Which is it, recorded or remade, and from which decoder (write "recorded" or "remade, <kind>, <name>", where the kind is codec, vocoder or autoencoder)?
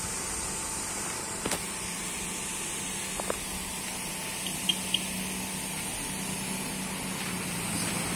recorded